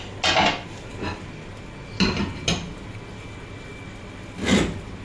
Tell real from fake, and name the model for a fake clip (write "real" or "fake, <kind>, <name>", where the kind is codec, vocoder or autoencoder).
real